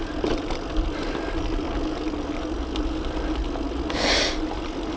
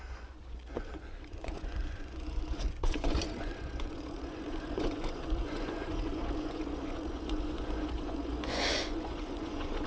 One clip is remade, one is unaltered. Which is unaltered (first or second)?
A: first